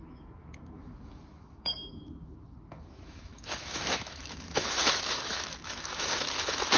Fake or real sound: fake